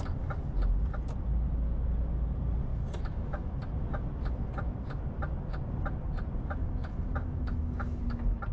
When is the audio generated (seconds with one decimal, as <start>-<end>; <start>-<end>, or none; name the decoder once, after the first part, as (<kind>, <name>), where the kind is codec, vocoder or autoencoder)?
2.7-3.5 (autoencoder, DAC-VAE); 6.6-8.0